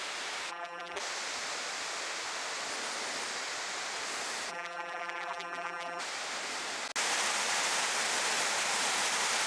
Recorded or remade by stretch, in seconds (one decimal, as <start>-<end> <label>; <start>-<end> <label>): 0.0-0.5 recorded; 0.5-1.0 remade; 1.0-4.5 recorded; 4.5-6.0 remade; 6.0-9.5 recorded